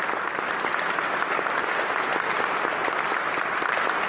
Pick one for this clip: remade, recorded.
recorded